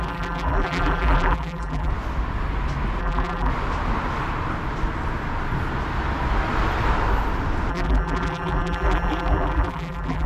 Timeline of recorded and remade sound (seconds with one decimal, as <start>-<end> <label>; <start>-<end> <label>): 0.0-1.9 remade; 1.9-3.0 recorded; 3.0-3.5 remade; 3.5-7.7 recorded; 7.7-10.3 remade